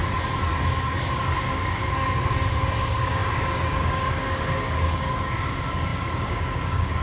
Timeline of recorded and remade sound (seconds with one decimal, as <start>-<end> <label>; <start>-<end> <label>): 0.0-0.6 recorded; 0.6-7.0 remade